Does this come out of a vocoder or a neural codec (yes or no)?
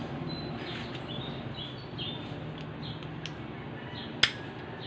no